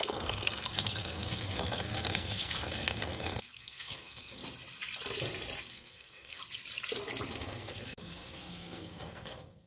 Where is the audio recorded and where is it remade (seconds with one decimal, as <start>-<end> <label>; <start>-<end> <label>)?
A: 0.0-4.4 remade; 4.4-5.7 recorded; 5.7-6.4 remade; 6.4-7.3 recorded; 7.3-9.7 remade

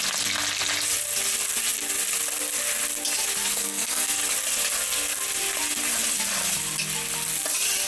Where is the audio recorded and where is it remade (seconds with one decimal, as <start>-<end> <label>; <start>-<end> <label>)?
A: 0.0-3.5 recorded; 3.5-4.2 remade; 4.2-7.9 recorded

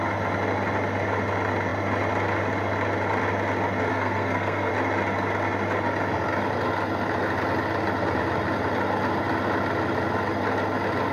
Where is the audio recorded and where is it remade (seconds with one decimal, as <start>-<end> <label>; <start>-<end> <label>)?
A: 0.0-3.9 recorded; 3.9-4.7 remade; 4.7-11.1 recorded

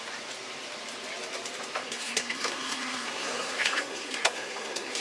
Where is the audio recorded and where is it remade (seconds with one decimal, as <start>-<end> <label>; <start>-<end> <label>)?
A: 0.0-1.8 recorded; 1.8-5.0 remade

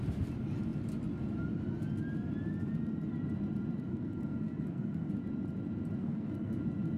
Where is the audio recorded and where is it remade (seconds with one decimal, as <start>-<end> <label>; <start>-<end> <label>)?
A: 0.0-3.9 recorded; 3.9-5.1 remade; 5.1-6.0 recorded; 6.0-6.6 remade; 6.6-7.0 recorded